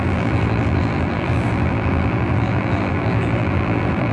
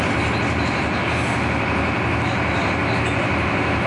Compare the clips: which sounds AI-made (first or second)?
first